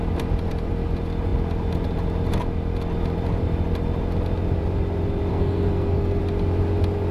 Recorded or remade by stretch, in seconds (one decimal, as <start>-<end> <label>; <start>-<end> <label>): 0.0-5.3 recorded; 5.3-6.2 remade; 6.2-7.1 recorded